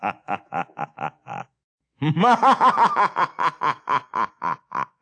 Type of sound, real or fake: fake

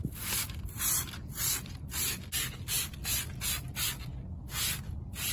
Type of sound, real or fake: real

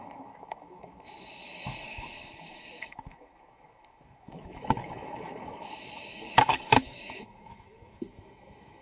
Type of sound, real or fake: fake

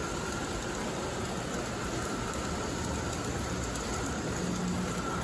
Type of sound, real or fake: real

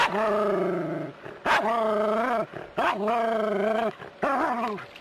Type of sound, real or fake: real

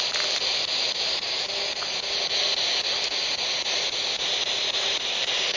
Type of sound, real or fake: real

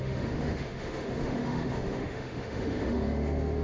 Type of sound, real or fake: fake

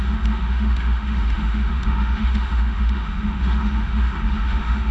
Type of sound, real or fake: fake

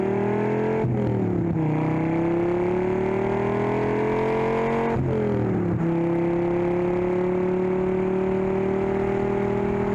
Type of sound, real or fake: real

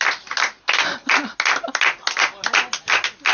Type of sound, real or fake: real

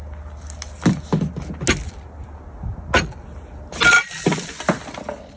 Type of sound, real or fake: real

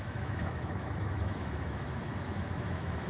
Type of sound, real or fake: fake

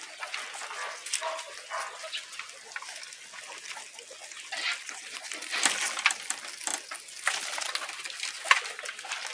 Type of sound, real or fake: real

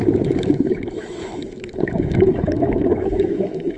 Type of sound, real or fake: fake